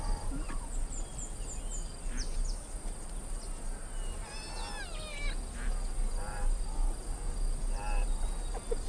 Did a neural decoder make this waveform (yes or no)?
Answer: no